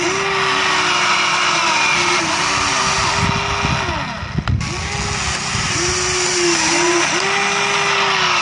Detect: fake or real real